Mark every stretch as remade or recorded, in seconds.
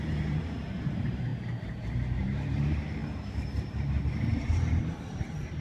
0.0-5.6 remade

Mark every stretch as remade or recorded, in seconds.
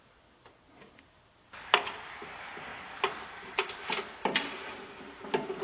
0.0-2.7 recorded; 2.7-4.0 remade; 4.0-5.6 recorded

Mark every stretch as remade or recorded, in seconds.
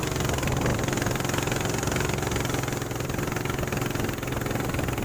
0.0-5.0 recorded